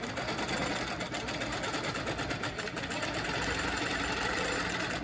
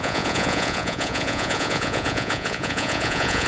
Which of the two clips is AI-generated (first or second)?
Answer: second